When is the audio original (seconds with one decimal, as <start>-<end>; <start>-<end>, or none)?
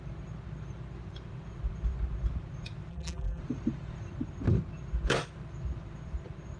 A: 0.0-2.9; 3.4-6.6